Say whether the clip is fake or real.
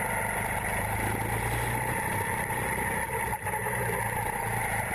real